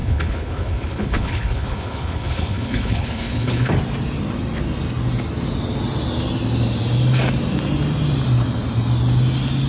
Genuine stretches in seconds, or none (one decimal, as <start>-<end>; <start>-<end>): 3.7-9.7